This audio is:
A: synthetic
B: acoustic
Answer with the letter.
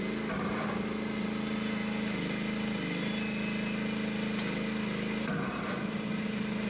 B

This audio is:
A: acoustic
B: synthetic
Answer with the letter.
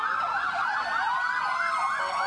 A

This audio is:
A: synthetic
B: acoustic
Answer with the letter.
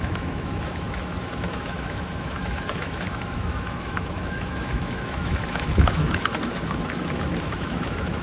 A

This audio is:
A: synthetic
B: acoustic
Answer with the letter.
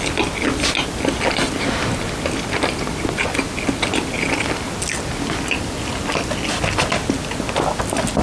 B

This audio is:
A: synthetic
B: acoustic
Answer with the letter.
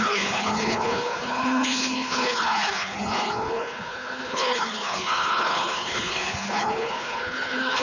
A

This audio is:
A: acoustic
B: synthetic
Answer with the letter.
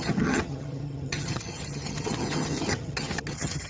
B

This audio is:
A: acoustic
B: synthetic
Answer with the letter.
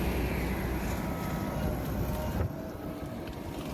A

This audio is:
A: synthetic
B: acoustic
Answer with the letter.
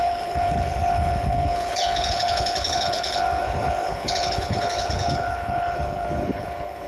A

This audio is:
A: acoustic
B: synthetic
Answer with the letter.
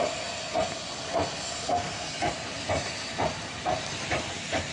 A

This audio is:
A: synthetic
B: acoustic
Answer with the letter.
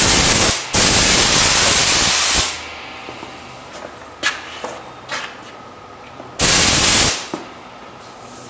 B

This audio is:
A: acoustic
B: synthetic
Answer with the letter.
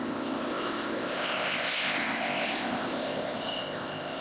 B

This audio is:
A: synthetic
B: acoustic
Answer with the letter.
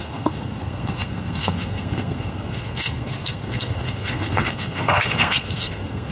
A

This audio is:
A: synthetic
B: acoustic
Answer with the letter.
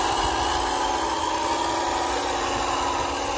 B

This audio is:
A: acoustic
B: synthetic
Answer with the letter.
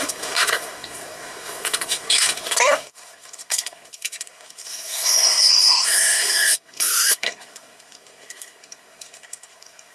B